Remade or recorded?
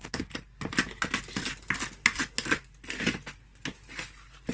recorded